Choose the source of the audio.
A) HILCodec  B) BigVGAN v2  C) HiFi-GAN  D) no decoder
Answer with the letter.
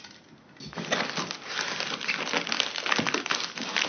D